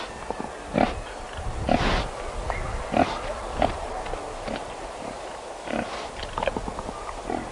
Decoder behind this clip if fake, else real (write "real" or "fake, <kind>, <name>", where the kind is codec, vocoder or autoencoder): real